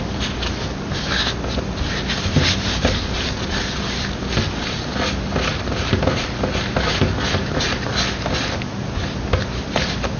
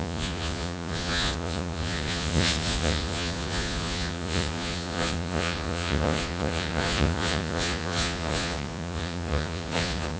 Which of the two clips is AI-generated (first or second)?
second